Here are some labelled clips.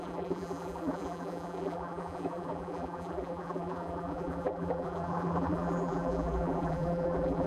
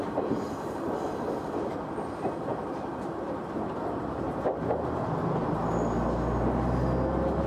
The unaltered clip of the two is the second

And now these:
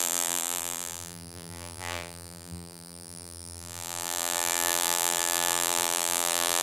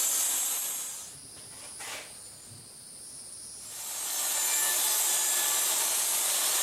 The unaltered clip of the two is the second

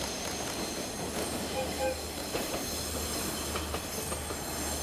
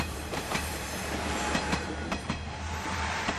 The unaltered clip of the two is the first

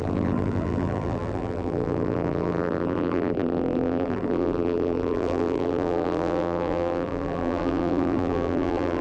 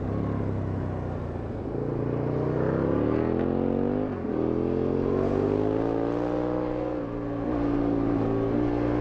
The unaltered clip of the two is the second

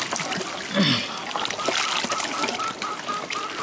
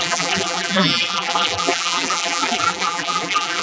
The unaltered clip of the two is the first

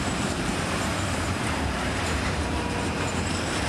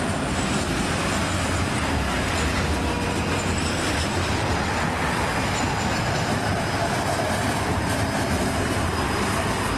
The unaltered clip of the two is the second